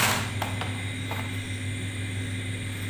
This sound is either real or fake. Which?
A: real